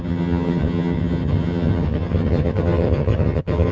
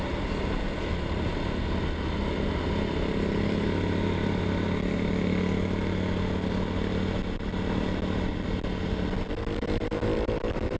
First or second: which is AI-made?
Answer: first